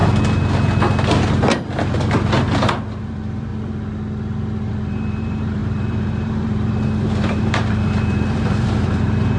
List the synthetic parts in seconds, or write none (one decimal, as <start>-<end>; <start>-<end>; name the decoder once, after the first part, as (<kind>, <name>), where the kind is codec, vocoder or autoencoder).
3.0-3.5 (vocoder, BigVGAN v2); 4.7-9.4